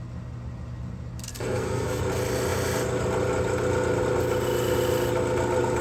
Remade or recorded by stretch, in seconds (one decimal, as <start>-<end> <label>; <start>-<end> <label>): 0.0-1.3 recorded; 1.3-2.0 remade; 2.0-5.8 recorded